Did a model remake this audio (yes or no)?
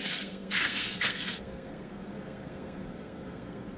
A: yes